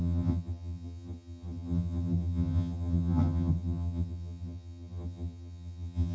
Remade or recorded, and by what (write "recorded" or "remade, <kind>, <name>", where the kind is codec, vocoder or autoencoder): remade, vocoder, HiFi-GAN